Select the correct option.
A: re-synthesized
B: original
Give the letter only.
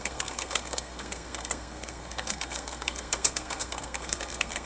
A